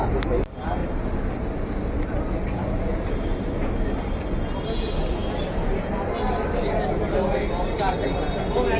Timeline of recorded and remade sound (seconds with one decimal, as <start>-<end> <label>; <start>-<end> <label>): 0.0-0.8 recorded; 0.8-1.3 remade; 1.3-8.8 recorded